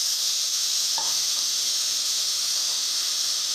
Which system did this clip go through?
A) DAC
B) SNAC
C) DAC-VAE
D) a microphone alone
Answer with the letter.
C